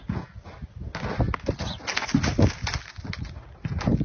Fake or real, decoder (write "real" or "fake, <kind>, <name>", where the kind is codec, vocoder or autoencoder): real